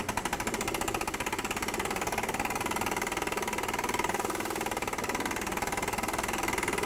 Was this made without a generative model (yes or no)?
yes